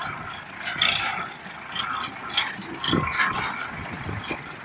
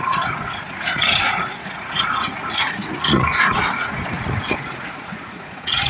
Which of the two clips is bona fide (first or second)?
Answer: first